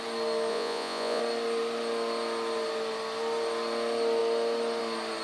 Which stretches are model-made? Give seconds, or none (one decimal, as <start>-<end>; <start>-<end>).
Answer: 0.5-1.2